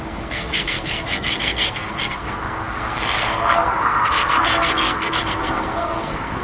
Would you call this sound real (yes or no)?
no